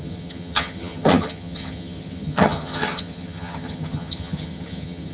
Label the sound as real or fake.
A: fake